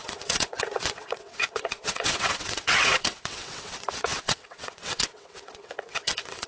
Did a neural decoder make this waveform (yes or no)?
yes